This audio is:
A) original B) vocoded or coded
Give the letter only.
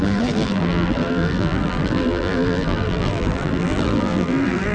B